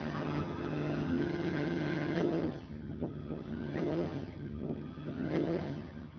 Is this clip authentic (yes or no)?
no